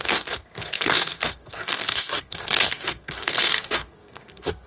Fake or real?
fake